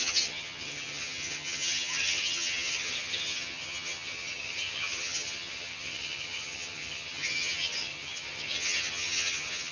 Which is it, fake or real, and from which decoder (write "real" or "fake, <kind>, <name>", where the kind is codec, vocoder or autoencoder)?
fake, vocoder, HiFi-GAN